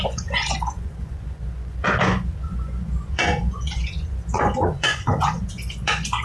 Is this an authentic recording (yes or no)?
no